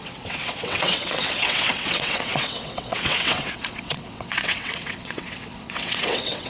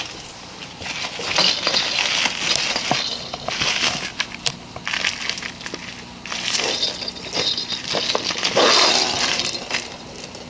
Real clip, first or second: second